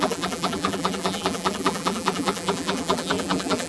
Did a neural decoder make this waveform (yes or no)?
yes